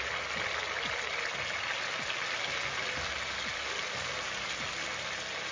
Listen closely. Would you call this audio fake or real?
real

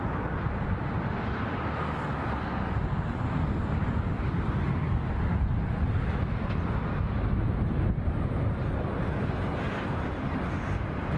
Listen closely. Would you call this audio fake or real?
real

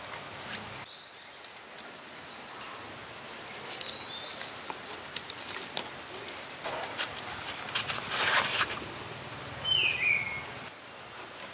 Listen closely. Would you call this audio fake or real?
real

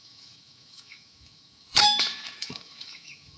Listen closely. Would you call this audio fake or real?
fake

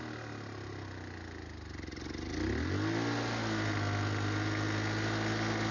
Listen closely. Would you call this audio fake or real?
real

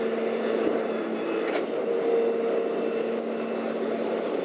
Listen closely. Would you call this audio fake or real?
real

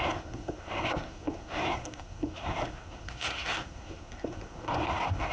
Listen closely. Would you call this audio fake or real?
fake